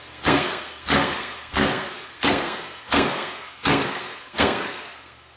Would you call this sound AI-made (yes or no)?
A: yes